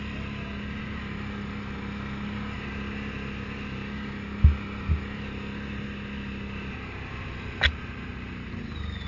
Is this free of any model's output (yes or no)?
yes